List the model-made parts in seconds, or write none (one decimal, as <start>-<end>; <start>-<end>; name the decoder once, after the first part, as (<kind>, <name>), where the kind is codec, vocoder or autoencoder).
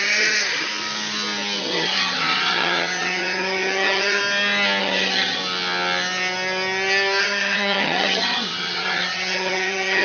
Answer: 0.0-0.7 (vocoder, HiFi-GAN); 1.6-4.2; 4.8-5.4; 7.2-10.0